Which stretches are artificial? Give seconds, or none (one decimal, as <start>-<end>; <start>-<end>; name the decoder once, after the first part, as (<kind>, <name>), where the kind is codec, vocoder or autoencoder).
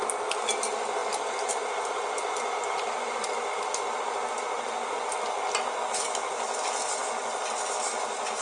none